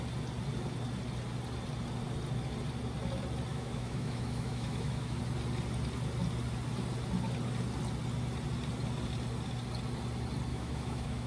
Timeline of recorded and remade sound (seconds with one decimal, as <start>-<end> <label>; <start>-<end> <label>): 0.0-3.5 recorded; 3.5-5.2 remade; 5.2-10.5 recorded; 10.5-11.3 remade